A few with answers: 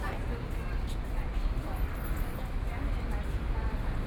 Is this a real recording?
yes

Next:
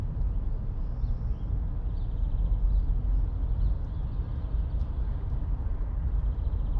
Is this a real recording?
yes